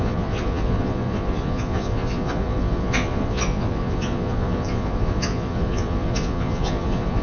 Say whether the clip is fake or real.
fake